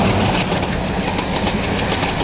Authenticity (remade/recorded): recorded